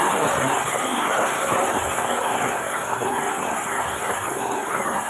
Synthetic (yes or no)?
yes